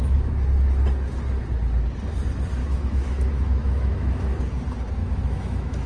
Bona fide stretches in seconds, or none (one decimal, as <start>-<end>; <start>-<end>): 0.0-2.6; 4.4-5.0